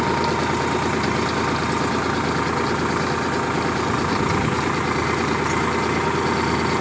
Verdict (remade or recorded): recorded